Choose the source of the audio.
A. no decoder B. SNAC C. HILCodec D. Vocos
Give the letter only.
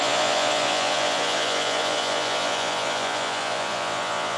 D